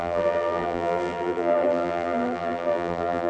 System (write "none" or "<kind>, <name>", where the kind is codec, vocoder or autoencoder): vocoder, BigVGAN v2